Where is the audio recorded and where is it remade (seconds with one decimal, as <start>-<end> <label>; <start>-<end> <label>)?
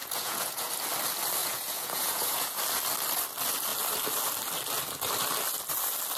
0.0-0.7 remade; 0.7-1.4 recorded; 1.4-2.6 remade; 2.6-6.2 recorded